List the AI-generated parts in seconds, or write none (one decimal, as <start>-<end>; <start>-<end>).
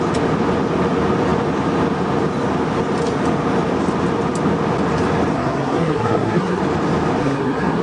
5.3-6.6; 7.2-7.8